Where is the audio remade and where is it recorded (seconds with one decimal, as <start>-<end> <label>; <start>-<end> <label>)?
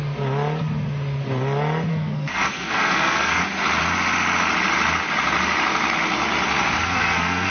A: 0.0-1.9 recorded; 1.9-3.4 remade; 3.4-6.8 recorded; 6.8-7.5 remade